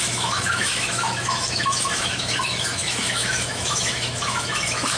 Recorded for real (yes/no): no